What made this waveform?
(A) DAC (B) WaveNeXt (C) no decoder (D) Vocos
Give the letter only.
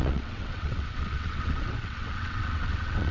B